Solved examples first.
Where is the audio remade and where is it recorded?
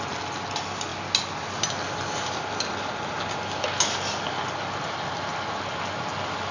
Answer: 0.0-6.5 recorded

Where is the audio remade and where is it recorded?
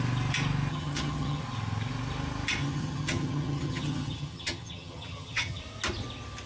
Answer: 0.0-0.7 recorded; 0.7-1.4 remade; 1.4-2.6 recorded; 2.6-5.6 remade; 5.6-6.5 recorded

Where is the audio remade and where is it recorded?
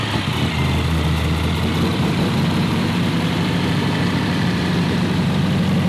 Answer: 0.0-1.9 recorded; 1.9-5.4 remade; 5.4-5.9 recorded